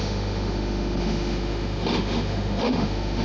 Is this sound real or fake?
fake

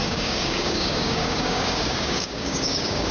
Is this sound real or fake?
fake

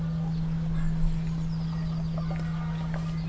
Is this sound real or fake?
real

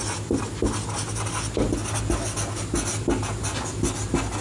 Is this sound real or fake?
real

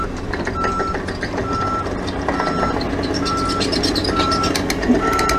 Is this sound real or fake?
real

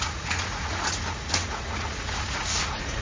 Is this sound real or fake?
fake